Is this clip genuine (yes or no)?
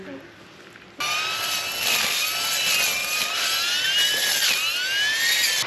yes